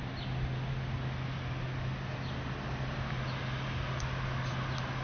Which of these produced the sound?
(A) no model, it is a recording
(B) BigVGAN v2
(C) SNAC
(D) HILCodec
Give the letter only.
A